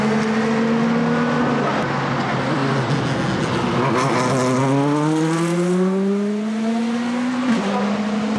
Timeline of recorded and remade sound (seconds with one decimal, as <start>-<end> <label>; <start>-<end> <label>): 0.0-8.4 recorded